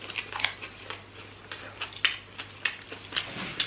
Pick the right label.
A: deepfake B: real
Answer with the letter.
B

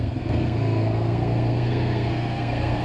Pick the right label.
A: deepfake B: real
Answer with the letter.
A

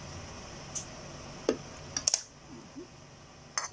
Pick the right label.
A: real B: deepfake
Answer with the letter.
A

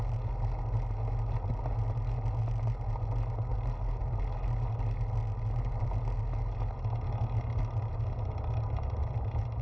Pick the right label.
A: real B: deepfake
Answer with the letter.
A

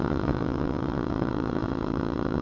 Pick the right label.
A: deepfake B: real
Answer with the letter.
A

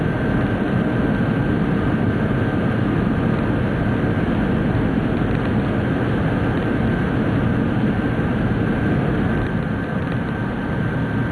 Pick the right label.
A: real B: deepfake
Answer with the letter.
A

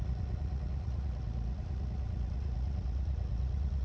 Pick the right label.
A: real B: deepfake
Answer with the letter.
B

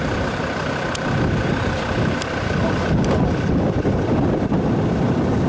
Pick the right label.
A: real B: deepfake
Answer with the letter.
B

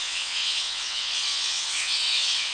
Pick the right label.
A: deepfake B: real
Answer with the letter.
A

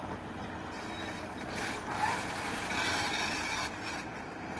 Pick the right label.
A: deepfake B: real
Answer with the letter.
B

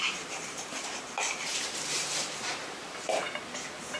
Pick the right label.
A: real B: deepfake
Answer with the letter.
B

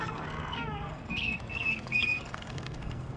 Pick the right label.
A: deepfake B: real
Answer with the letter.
A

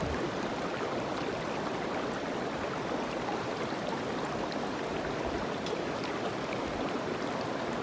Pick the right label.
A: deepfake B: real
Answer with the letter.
B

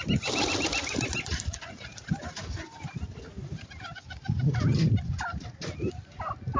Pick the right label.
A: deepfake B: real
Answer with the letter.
B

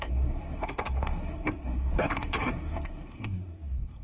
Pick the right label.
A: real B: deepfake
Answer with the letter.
B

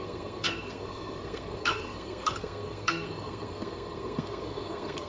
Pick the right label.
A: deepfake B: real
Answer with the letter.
A